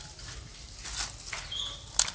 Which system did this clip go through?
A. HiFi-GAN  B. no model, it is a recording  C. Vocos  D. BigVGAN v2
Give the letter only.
B